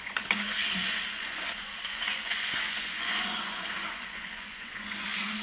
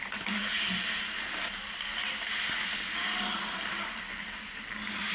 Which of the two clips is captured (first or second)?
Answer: second